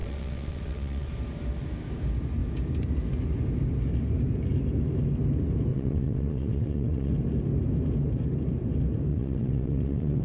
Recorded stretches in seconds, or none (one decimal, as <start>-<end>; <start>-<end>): 1.1-5.7; 7.1-9.1